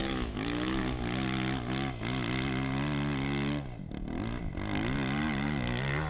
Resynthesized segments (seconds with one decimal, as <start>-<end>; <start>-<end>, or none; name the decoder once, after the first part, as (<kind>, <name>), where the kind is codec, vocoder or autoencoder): 0.0-0.8 (autoencoder, DAC-VAE)